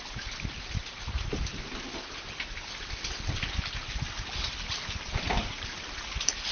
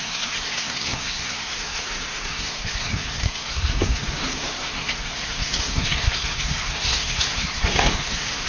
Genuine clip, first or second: first